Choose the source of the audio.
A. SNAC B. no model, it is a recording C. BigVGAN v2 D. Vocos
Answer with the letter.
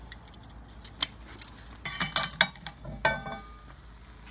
B